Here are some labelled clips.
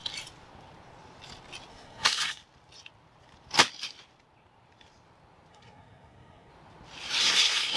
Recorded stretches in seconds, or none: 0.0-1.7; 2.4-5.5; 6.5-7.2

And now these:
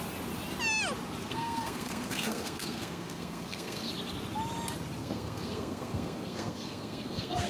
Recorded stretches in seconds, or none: 0.0-1.2; 3.9-5.0

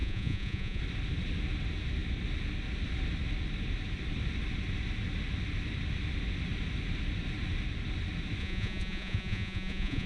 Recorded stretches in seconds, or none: 0.8-8.4

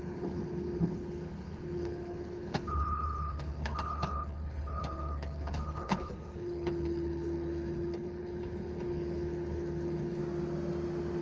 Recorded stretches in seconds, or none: 10.2-11.2

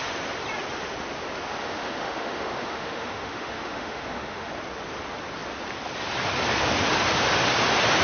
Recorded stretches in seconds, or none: 0.0-1.6; 4.5-8.0